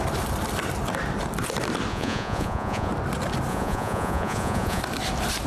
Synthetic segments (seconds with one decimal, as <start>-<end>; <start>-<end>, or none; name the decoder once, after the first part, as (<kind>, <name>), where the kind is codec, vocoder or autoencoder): 1.9-2.9 (vocoder, Vocos); 3.5-4.8